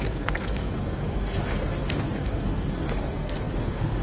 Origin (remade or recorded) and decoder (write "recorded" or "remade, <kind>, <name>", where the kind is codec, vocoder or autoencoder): remade, codec, SNAC